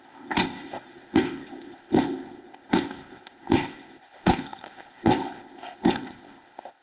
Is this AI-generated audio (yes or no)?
yes